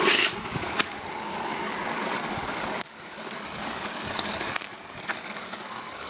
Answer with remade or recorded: remade